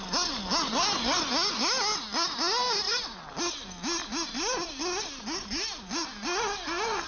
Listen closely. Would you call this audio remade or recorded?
recorded